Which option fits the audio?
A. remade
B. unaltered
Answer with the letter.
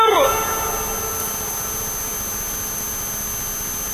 B